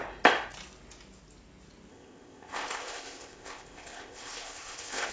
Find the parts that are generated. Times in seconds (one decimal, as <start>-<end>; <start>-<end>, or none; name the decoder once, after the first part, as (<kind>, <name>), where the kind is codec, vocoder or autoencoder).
1.9-5.1 (codec, ZipCodec)